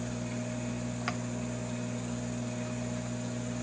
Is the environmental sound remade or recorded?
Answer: recorded